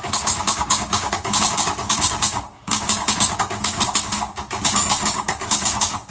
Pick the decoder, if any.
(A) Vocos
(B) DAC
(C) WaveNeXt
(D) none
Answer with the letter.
B